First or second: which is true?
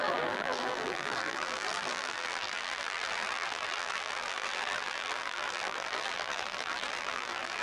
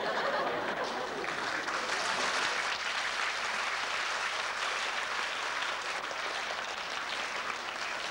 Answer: second